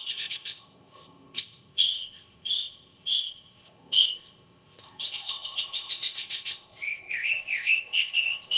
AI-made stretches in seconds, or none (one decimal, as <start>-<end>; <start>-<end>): 0.0-8.6